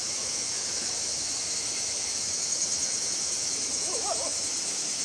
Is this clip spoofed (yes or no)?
yes